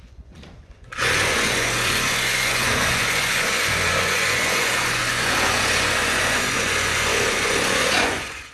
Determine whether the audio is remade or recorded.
remade